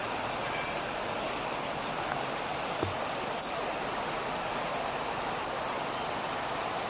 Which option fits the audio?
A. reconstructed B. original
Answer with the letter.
B